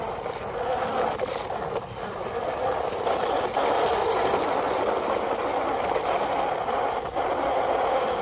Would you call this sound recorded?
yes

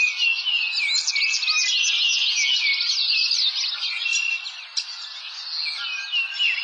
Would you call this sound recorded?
yes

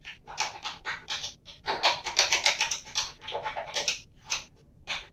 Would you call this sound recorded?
no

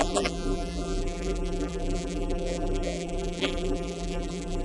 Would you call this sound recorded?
no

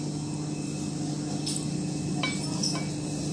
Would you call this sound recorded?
yes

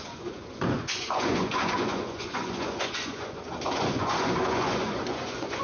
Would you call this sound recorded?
no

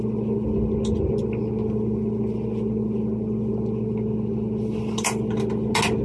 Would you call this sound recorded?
yes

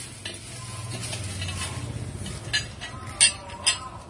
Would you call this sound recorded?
yes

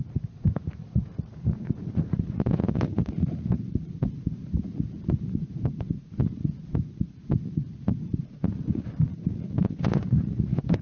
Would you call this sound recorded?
no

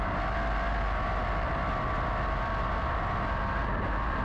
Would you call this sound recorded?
yes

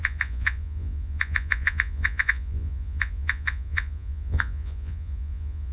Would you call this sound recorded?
no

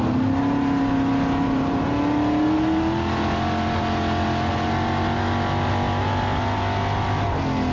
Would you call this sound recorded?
yes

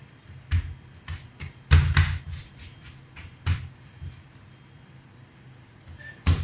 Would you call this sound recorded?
yes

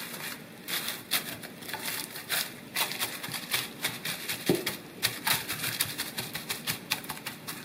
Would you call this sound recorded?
no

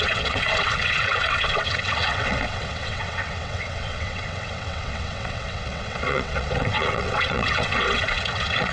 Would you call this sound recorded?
no